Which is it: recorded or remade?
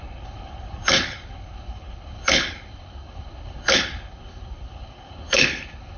remade